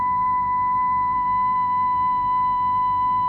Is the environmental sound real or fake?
fake